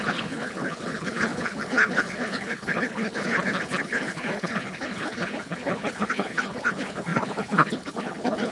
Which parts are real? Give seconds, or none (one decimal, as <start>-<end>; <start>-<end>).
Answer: none